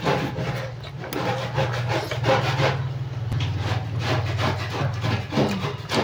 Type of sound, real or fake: real